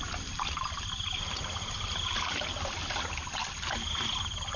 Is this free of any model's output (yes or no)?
yes